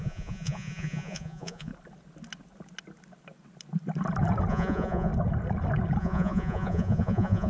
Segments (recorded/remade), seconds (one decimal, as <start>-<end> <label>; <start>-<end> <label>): 0.0-1.7 remade; 1.7-4.5 recorded; 4.5-5.1 remade; 5.1-6.0 recorded; 6.0-7.5 remade